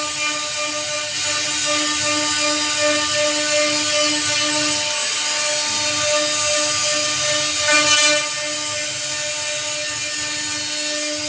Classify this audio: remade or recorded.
recorded